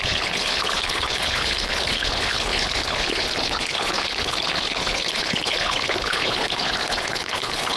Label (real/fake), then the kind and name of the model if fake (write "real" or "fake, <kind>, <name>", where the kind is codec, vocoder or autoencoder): fake, codec, HILCodec